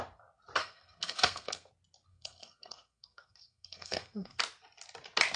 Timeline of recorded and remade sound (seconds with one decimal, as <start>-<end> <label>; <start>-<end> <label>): 0.0-0.6 recorded; 0.6-1.7 remade; 1.7-2.1 recorded; 2.1-4.4 remade; 4.4-5.4 recorded